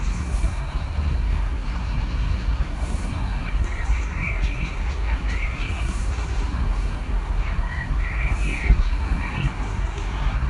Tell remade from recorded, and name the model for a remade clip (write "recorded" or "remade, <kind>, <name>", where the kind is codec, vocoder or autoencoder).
remade, codec, SNAC